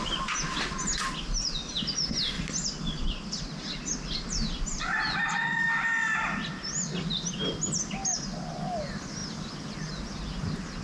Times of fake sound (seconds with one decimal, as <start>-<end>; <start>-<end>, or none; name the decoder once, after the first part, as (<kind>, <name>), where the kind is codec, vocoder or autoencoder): none